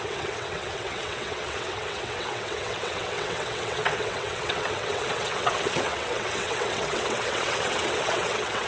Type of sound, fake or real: fake